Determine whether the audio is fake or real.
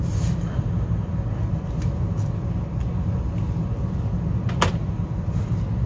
real